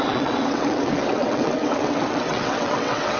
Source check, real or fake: fake